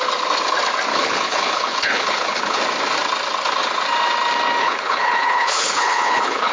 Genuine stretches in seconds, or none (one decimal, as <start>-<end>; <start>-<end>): 0.0-0.9; 2.6-4.6

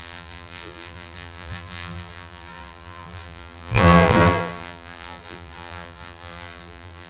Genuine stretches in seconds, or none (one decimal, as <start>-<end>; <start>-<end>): none

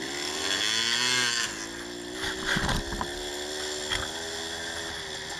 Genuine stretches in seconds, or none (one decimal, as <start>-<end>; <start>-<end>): 0.0-5.4

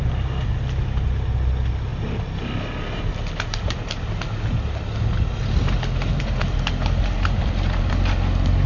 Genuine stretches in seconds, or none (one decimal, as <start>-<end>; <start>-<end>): 0.0-8.7